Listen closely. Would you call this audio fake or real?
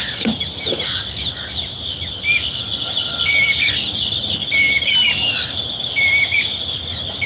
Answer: real